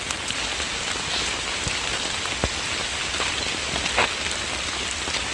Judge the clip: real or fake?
real